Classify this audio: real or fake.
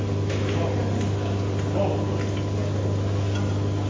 real